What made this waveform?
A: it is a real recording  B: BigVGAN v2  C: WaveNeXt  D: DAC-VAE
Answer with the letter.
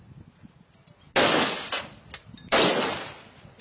A